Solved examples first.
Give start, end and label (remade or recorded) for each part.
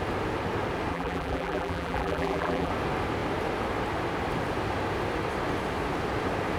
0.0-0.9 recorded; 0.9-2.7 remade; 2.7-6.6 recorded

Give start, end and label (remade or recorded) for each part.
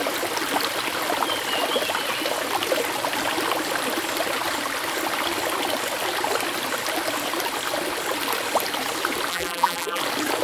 0.0-9.3 recorded; 9.3-10.0 remade; 10.0-10.4 recorded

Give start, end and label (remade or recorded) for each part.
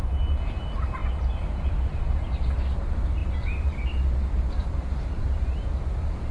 0.0-6.3 recorded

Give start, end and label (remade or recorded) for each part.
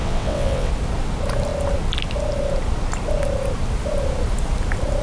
0.0-0.7 remade; 0.7-5.0 recorded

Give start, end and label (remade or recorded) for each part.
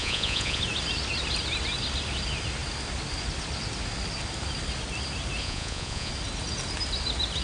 0.0-0.6 remade; 0.6-5.4 recorded; 5.4-6.1 remade; 6.1-7.4 recorded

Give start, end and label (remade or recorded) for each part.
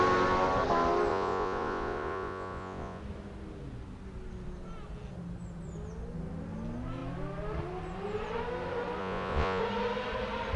0.0-1.1 recorded; 1.1-3.0 remade; 3.0-9.0 recorded; 9.0-9.6 remade; 9.6-10.6 recorded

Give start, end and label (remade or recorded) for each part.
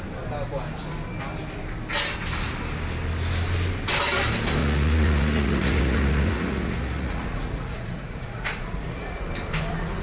0.0-4.6 recorded; 4.6-9.3 remade; 9.3-10.0 recorded